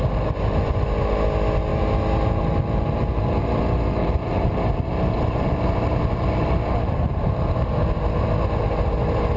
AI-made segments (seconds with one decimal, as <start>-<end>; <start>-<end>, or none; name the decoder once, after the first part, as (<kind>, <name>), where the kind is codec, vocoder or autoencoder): 4.0-7.9 (vocoder, BigVGAN v2)